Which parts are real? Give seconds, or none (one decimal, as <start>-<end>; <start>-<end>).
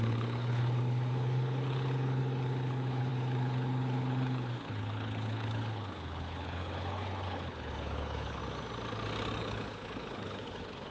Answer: 8.4-9.4